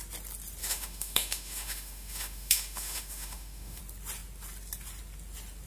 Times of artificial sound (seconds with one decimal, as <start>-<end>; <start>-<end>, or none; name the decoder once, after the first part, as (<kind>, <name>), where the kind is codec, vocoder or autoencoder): 0.6-3.8 (autoencoder, DAC-VAE)